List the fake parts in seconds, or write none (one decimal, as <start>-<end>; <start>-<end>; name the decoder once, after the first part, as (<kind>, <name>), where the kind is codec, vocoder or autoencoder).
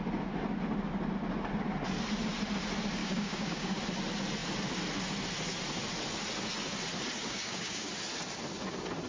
3.0-3.8 (codec, DAC); 7.2-7.9